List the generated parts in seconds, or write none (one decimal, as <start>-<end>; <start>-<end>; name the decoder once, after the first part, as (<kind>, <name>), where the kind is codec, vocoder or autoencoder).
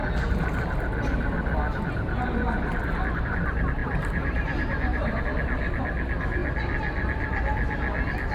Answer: 3.8-5.2 (vocoder, BigVGAN v2)